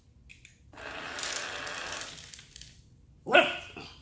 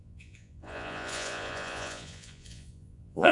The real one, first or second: first